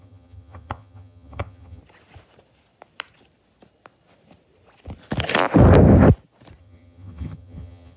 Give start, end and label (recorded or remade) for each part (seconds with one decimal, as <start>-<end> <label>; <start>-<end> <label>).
0.0-1.8 remade; 1.8-6.6 recorded; 6.6-8.0 remade